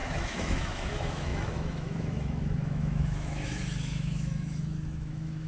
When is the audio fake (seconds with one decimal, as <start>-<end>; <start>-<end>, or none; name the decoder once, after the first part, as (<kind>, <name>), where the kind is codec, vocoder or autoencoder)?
0.0-5.5 (autoencoder, DAC-VAE)

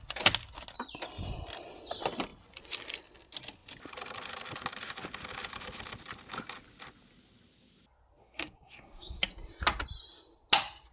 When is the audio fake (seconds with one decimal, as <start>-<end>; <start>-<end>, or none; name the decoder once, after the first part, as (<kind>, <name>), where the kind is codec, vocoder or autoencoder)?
8.2-9.2 (codec, SNAC)

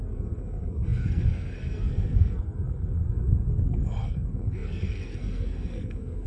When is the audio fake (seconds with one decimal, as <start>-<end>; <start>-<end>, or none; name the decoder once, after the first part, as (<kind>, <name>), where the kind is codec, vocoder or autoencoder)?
0.0-6.3 (codec, SNAC)

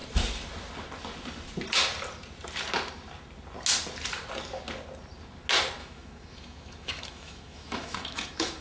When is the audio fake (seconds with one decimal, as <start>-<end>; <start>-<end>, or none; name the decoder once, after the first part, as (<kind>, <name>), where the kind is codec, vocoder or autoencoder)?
5.8-8.6 (autoencoder, DAC-VAE)